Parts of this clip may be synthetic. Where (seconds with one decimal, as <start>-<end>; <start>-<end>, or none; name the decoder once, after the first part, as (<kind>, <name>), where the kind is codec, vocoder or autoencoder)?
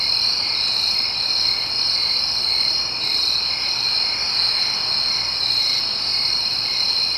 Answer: 0.0-3.2 (vocoder, BigVGAN v2); 6.2-7.2